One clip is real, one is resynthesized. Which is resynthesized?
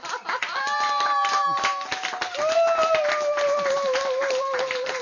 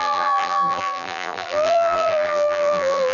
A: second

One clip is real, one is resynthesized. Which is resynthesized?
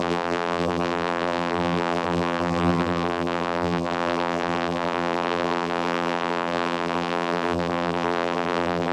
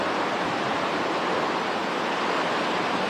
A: first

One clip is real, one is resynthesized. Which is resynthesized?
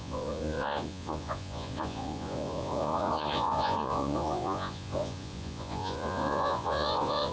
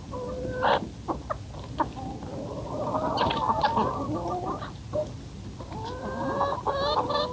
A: first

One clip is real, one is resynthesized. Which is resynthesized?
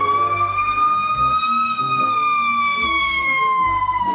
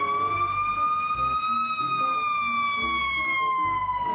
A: first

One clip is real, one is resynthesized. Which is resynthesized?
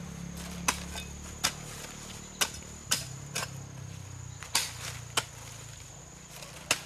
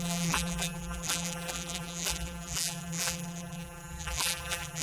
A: second